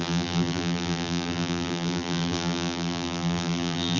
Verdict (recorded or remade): remade